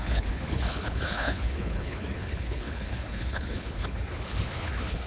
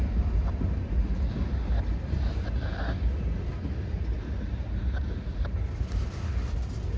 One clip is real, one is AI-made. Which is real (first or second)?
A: second